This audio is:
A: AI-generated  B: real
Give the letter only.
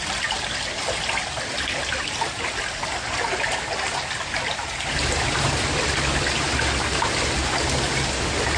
B